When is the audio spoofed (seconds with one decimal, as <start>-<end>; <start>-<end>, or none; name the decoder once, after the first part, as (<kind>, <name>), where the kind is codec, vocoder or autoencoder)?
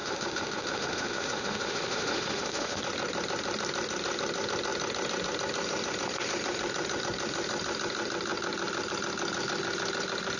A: 0.0-2.8 (autoencoder, DAC-VAE)